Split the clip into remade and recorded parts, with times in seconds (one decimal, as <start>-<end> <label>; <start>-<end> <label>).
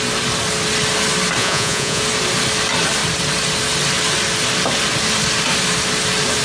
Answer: 0.0-1.4 recorded; 1.4-2.0 remade; 2.0-6.4 recorded